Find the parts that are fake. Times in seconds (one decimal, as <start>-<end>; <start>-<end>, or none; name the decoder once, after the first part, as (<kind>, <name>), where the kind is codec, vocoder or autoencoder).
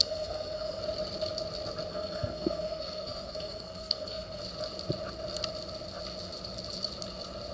0.0-0.8 (codec, SNAC); 1.9-4.4